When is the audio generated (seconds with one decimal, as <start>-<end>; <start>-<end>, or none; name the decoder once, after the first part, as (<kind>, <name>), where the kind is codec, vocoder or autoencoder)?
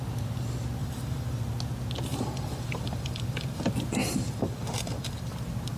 0.8-1.4 (vocoder, BigVGAN v2); 2.1-3.6; 4.0-5.3